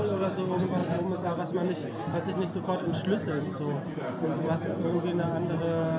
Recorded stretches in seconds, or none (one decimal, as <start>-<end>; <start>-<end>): 0.0-6.0